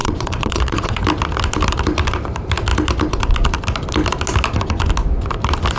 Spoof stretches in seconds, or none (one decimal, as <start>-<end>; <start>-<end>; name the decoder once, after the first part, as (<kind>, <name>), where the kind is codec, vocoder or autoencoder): 0.0-1.0 (vocoder, Vocos)